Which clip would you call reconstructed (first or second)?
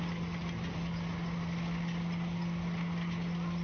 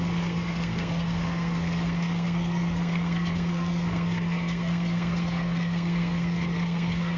second